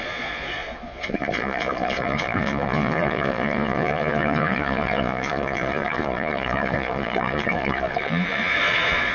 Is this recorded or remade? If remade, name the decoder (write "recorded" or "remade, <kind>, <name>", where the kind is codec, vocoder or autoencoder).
remade, vocoder, Vocos